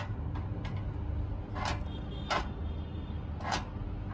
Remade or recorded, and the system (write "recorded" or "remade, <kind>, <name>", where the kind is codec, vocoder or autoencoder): recorded